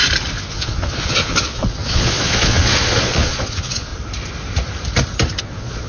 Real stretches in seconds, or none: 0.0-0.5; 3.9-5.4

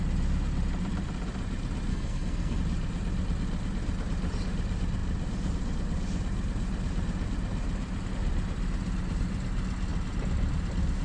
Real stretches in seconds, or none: 0.0-1.9; 2.6-11.0

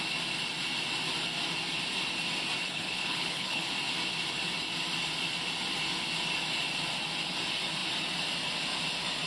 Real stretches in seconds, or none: 0.0-2.6; 3.7-9.3

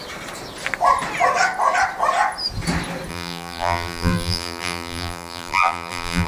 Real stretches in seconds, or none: 0.0-3.1